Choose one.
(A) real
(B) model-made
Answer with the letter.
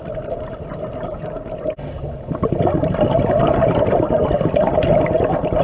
A